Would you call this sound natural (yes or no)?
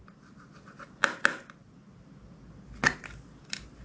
yes